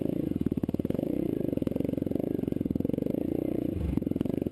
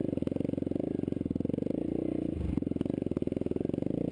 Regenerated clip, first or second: first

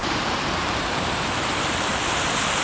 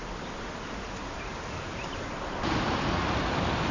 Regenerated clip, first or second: first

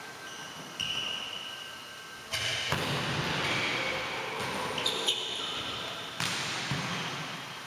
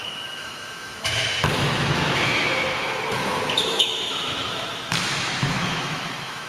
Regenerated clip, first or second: second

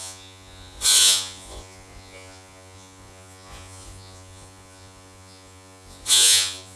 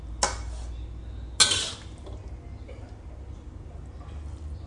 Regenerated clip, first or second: first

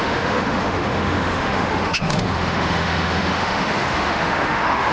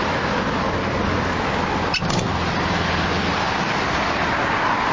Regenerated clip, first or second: first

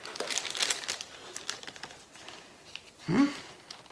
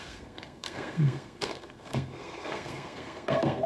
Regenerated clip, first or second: second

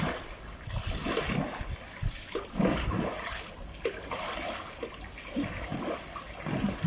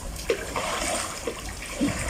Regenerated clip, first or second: second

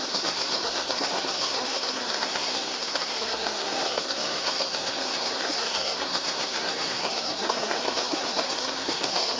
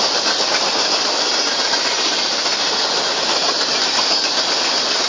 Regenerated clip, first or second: first